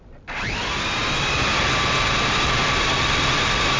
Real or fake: real